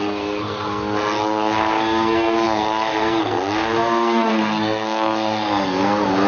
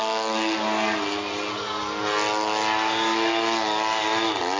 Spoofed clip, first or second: first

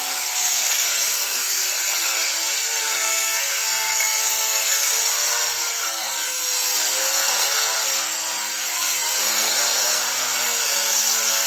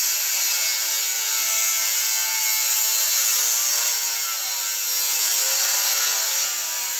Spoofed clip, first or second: first